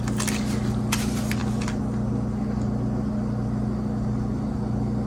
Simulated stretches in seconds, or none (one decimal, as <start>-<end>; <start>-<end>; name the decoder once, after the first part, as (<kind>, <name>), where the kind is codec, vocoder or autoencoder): none